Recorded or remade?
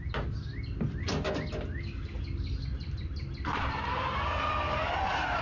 recorded